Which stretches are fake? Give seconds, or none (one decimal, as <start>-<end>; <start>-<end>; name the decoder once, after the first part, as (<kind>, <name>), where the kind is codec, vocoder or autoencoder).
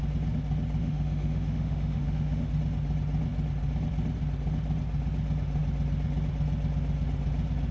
0.8-2.5 (autoencoder, DAC-VAE)